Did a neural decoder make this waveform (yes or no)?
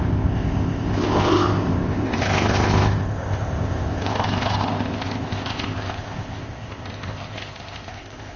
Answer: yes